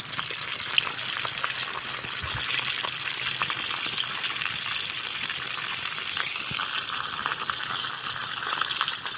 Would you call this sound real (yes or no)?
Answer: yes